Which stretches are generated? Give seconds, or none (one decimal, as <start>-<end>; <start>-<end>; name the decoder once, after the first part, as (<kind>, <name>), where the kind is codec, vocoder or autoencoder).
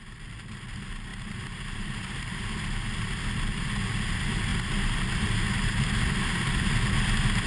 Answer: 1.1-2.4 (vocoder, BigVGAN v2)